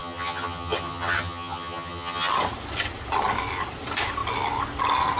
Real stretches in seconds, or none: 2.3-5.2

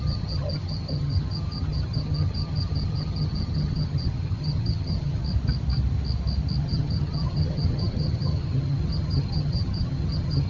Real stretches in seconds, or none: 5.2-6.6

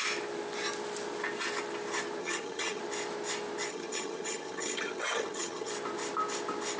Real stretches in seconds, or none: 0.0-2.2; 2.8-3.7; 5.7-6.8

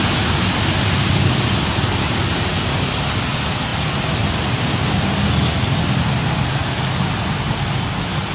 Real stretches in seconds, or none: 0.0-8.3

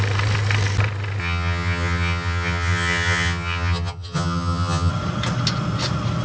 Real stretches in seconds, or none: 0.0-1.2; 4.9-6.2

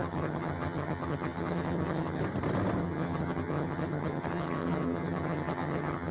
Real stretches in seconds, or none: 2.2-2.8